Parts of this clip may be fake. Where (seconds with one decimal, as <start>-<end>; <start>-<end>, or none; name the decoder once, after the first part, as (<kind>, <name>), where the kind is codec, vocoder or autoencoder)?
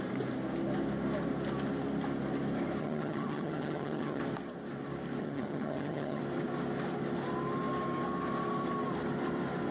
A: 2.8-4.2 (vocoder, HiFi-GAN); 5.2-6.2